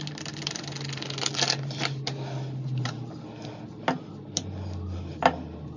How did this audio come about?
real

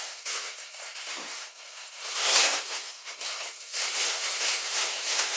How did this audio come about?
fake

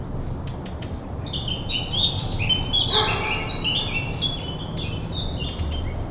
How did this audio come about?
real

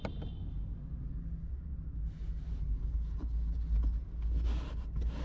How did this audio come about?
real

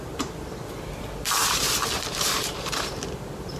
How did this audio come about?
fake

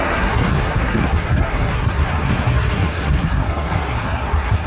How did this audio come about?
fake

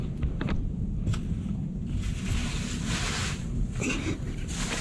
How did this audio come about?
fake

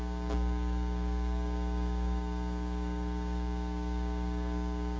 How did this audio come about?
fake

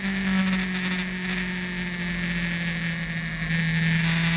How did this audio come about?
real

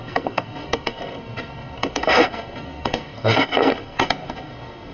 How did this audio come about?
fake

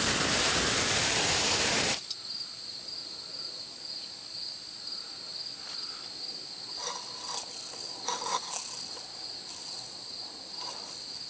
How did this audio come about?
real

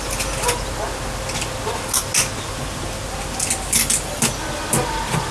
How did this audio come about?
real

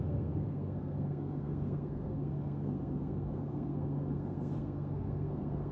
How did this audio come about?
fake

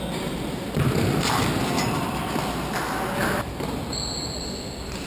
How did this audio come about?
real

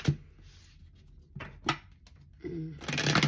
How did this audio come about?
real